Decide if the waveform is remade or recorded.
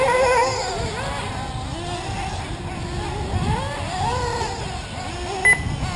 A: recorded